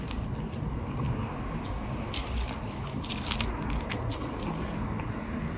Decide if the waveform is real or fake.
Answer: real